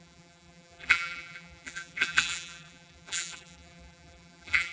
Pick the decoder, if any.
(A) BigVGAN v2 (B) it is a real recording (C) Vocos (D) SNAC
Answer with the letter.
A